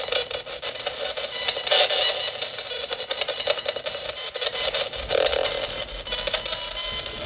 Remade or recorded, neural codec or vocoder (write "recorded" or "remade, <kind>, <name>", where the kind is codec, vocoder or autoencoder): recorded